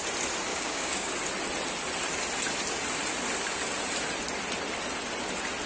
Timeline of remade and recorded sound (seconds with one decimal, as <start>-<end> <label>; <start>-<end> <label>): 0.0-0.5 recorded; 0.5-1.1 remade; 1.1-5.7 recorded